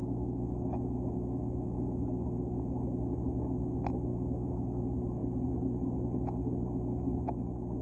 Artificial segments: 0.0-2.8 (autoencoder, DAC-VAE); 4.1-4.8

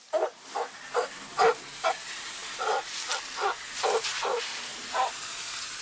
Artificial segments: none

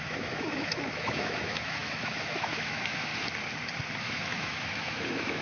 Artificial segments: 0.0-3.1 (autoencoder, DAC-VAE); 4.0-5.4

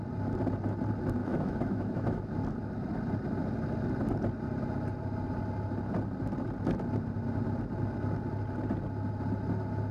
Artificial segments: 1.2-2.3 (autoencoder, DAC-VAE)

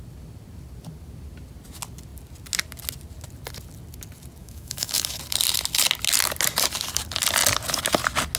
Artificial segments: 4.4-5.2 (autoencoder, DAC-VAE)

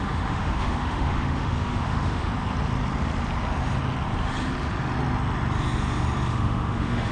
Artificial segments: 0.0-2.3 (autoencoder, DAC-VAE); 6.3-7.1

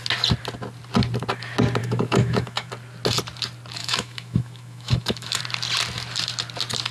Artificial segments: 1.8-2.7 (autoencoder, DAC-VAE); 3.8-5.4